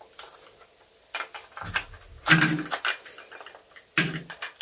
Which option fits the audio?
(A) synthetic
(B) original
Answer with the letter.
B